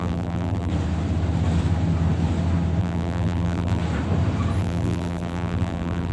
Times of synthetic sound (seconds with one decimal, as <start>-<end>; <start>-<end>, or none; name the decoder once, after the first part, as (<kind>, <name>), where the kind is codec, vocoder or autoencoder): 0.0-0.7 (vocoder, BigVGAN v2); 2.8-3.8; 4.6-6.1